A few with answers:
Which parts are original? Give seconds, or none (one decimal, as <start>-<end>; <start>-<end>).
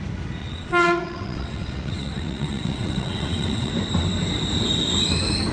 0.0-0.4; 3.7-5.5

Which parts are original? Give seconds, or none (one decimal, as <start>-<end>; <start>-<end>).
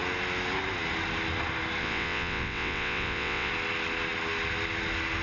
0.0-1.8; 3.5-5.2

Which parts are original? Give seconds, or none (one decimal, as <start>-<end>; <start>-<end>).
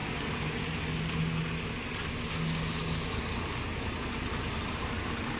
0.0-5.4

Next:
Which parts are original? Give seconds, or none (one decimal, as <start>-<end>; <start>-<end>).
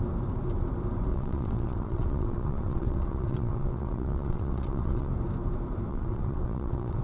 0.0-1.1; 5.1-5.9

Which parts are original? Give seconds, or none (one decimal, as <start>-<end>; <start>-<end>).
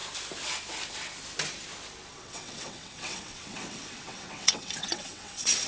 0.0-2.1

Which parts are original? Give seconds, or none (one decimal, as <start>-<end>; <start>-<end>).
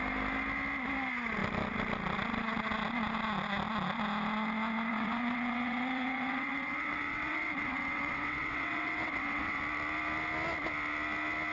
0.0-4.9; 9.6-11.5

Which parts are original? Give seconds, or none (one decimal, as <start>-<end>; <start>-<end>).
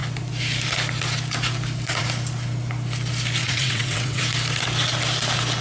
0.0-3.4; 4.2-5.6